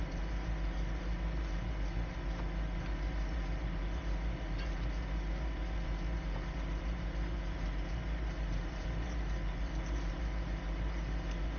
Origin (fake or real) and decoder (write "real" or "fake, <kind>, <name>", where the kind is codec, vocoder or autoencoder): fake, vocoder, BigVGAN v2